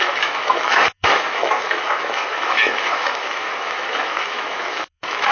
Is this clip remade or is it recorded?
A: remade